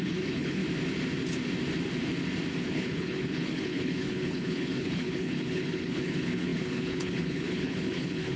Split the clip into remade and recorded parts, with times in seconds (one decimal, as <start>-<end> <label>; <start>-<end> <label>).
0.0-0.6 remade; 0.6-2.6 recorded; 2.6-8.4 remade